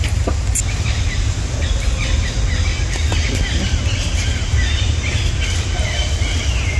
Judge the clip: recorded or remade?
recorded